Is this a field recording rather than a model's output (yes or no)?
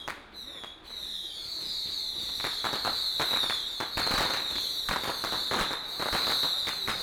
yes